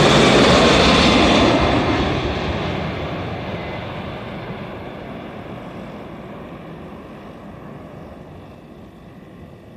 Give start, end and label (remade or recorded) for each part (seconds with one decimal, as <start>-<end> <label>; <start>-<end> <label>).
0.0-9.8 recorded